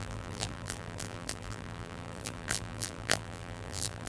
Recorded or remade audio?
remade